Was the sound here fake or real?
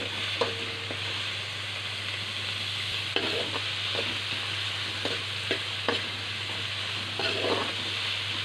real